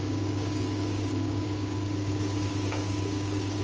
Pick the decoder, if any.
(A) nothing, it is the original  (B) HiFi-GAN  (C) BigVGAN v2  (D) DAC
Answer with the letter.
D